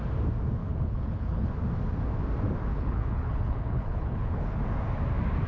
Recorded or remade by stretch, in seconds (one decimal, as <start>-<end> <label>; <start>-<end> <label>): 0.0-0.6 recorded; 0.6-1.5 remade; 1.5-2.7 recorded; 2.7-4.6 remade; 4.6-5.5 recorded